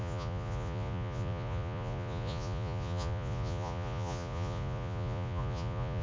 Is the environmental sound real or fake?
fake